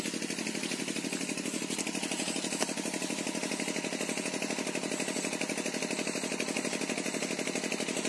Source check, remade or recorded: recorded